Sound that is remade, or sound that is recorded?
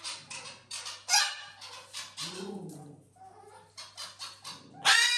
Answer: recorded